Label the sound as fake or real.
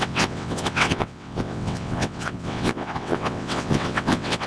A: fake